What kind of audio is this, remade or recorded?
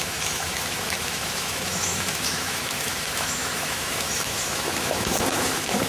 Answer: remade